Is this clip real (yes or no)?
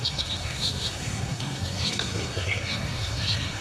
no